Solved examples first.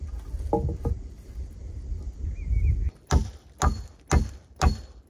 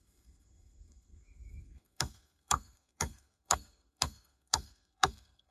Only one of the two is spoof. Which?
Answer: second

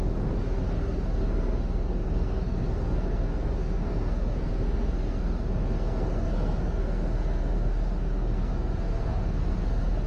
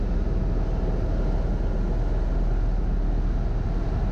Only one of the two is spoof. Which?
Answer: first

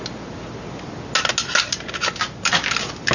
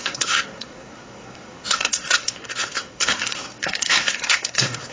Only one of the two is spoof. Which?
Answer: second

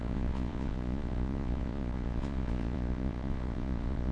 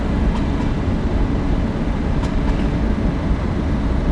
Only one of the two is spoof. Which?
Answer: first